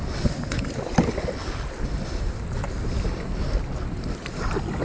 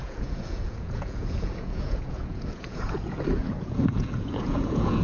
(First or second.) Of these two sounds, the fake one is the second